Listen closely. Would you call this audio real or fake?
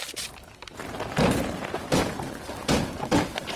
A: fake